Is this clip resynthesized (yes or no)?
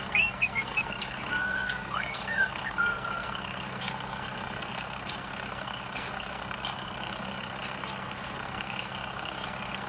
yes